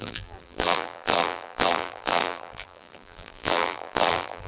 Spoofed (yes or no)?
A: yes